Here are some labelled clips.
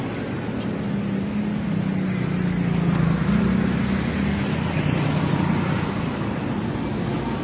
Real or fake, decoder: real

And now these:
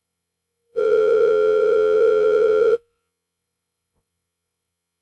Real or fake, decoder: fake, vocoder, WaveNeXt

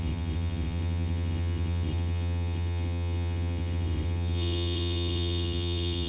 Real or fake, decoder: fake, vocoder, WaveNeXt